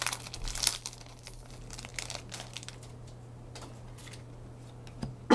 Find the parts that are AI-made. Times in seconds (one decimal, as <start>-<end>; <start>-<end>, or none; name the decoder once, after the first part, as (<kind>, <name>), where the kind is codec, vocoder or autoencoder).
none